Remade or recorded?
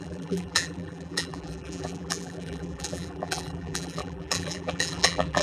remade